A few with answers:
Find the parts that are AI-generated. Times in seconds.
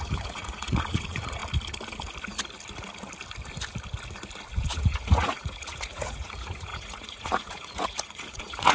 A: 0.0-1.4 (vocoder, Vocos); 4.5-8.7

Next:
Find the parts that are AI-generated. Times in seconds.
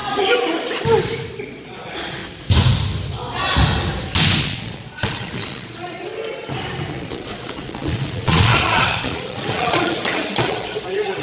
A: 1.4-2.2 (vocoder, Vocos); 4.4-6.1; 6.9-11.2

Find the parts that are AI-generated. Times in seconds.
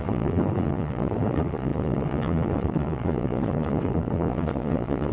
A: 0.0-5.1 (vocoder, Vocos)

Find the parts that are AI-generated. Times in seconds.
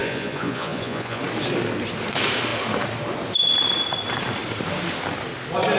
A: 0.0-1.2 (vocoder, Vocos)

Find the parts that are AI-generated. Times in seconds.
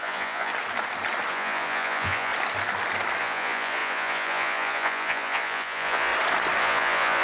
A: 0.0-0.5 (vocoder, Vocos); 1.3-2.3; 3.2-6.1; 6.6-7.2